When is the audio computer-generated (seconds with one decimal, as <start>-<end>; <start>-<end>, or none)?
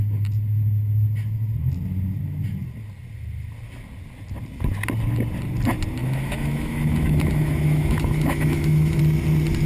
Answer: 6.0-9.0